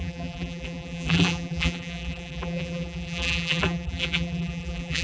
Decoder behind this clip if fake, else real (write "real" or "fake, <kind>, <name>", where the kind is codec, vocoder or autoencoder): fake, vocoder, BigVGAN v2